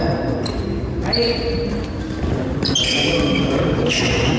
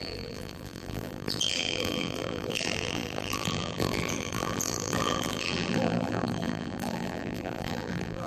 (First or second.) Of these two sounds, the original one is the first